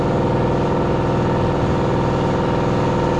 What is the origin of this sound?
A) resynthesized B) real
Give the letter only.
B